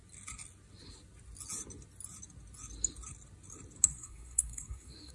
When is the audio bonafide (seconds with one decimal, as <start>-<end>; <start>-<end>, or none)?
0.0-3.9